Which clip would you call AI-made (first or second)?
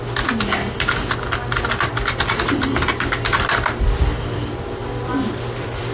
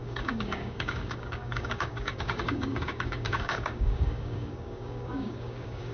second